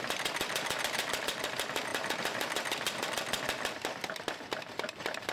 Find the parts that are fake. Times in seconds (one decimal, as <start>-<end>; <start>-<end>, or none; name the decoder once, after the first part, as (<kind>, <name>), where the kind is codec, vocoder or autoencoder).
none